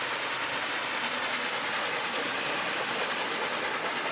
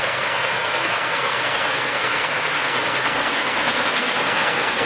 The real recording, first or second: first